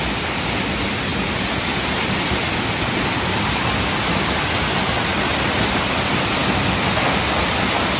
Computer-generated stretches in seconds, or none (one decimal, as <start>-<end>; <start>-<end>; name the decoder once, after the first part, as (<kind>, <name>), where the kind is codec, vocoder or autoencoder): none